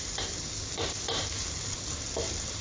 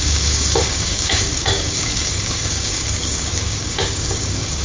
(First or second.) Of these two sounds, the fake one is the second